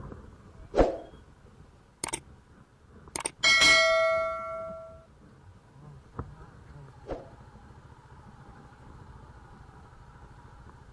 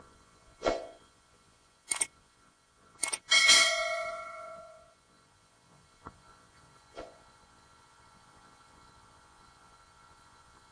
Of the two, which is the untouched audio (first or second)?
first